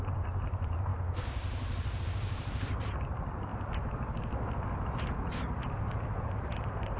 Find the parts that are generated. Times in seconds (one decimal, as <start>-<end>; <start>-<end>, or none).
0.0-0.9; 2.0-3.5; 5.7-7.0